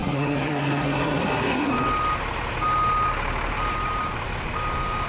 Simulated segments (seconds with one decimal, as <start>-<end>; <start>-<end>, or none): 0.0-1.7